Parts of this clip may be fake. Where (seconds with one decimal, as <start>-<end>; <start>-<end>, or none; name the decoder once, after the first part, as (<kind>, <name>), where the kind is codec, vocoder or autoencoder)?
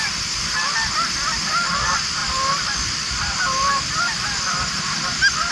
none